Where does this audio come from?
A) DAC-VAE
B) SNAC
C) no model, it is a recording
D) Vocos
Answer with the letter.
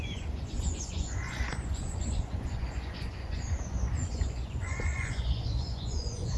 D